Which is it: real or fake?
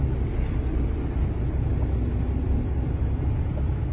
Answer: real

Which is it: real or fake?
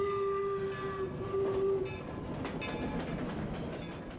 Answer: real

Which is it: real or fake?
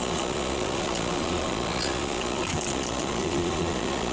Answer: fake